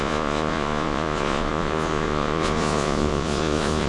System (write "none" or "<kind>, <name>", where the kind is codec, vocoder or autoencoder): vocoder, Vocos